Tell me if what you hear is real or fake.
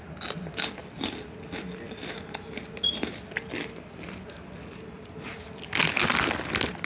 real